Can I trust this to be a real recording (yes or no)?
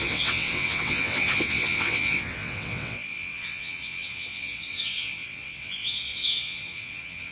no